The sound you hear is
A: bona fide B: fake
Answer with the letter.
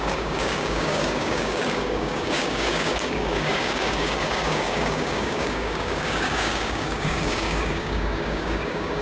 B